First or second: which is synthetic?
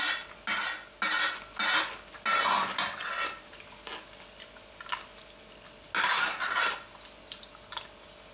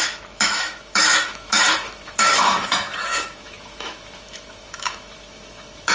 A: second